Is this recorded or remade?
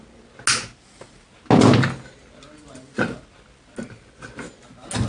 recorded